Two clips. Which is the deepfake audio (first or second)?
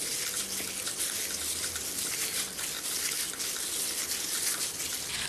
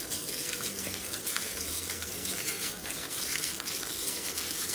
second